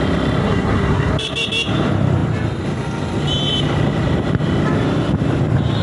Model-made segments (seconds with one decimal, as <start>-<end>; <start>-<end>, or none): 0.4-1.1